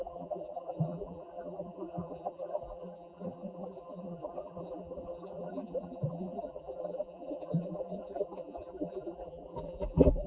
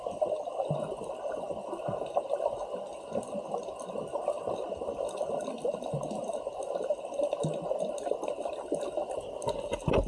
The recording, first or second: second